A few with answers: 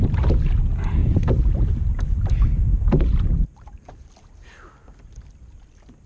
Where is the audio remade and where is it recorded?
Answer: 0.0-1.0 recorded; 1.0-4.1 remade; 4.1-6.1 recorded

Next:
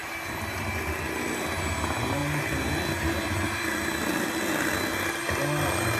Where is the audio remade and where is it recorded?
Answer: 0.0-6.0 recorded

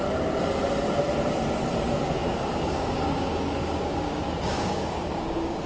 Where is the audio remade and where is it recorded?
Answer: 0.0-1.8 recorded; 1.8-5.7 remade

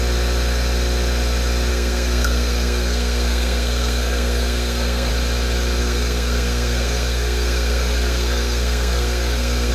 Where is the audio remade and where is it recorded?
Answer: 0.0-1.7 recorded; 1.7-5.1 remade; 5.1-5.8 recorded; 5.8-9.7 remade

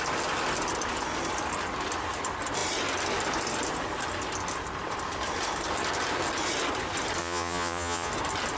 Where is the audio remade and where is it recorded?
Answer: 0.0-7.2 recorded; 7.2-8.1 remade; 8.1-8.6 recorded

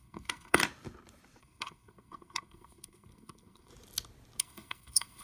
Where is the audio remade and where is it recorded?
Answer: 0.0-0.6 remade; 0.6-1.4 recorded; 1.4-3.7 remade; 3.7-4.4 recorded; 4.4-5.2 remade

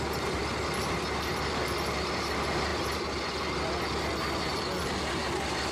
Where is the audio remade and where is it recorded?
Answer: 0.0-5.7 recorded